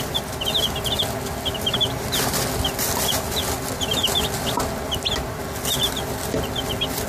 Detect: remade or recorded recorded